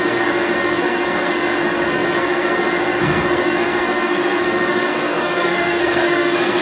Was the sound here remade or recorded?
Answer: remade